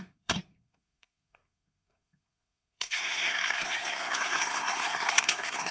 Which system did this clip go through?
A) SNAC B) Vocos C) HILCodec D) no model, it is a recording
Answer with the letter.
A